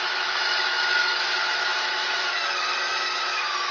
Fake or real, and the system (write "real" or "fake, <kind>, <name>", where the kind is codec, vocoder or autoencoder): fake, autoencoder, DAC-VAE